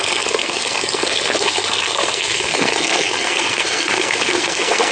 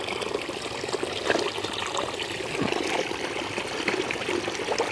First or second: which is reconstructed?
first